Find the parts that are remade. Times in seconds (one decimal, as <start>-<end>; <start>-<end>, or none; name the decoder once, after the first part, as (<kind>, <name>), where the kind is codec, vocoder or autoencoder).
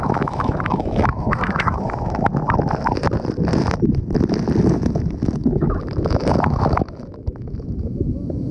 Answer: 0.0-2.3 (autoencoder, DAC-VAE); 4.6-8.5